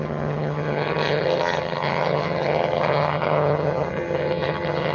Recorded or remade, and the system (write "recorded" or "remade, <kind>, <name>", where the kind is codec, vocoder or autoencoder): remade, vocoder, HiFi-GAN